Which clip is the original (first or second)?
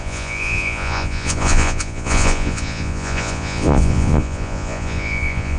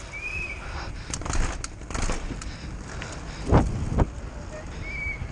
second